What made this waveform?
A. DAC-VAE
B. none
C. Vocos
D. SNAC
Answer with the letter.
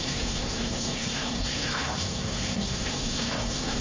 D